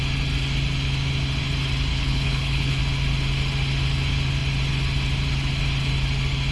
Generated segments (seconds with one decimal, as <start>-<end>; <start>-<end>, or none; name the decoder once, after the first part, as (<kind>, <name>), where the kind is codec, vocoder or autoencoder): 1.9-2.8 (codec, HILCodec)